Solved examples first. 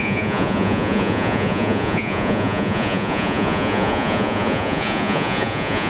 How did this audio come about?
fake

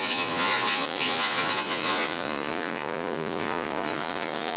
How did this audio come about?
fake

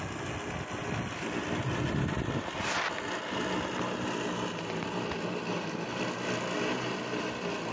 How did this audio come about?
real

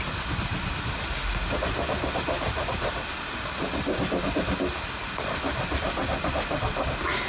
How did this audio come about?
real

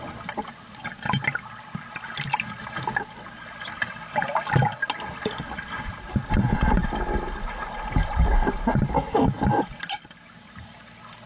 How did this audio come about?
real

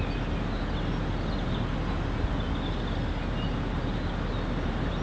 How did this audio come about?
real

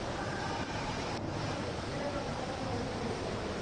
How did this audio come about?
fake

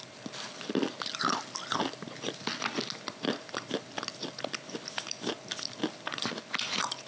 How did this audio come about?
real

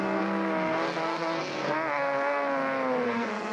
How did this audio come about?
fake